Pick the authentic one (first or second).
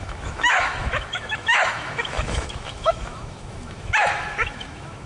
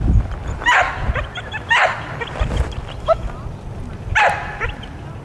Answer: second